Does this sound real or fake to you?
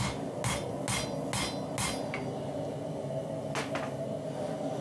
real